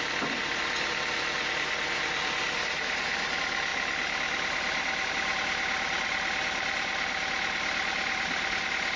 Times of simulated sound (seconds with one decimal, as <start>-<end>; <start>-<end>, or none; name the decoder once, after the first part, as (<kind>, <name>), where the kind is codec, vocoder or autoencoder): none

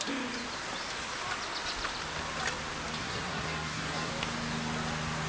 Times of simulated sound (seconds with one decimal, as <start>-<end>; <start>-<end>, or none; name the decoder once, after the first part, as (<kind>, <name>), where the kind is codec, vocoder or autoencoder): 3.0-4.1 (codec, SNAC)

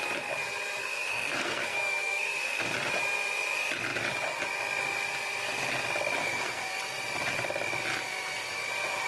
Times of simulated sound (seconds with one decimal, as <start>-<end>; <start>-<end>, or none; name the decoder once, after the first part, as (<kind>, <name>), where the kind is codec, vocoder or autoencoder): 0.8-2.6 (codec, SNAC); 6.2-6.7

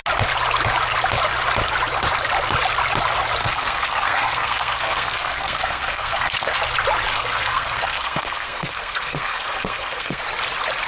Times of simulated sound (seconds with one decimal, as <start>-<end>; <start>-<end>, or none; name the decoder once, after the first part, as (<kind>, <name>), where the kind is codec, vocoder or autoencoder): 3.4-6.6 (codec, SNAC); 7.1-10.2

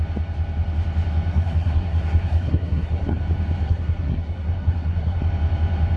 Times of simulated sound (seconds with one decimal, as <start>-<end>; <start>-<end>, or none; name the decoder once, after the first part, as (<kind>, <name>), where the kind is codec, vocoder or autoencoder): 1.3-3.2 (codec, SNAC); 3.6-5.2

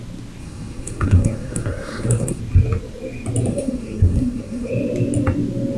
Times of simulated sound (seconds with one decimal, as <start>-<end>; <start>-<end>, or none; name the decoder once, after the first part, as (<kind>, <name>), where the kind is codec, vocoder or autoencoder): 0.4-2.4 (codec, SNAC); 3.5-4.7

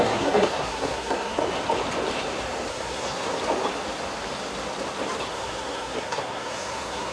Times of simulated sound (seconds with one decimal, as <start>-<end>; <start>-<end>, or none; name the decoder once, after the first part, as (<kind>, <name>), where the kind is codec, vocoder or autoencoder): 0.0-1.4 (codec, SNAC); 2.7-3.3; 5.3-7.1

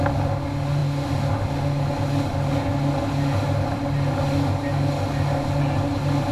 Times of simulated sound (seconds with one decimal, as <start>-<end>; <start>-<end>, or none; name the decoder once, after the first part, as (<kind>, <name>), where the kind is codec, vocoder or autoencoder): none